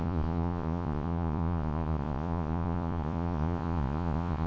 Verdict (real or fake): fake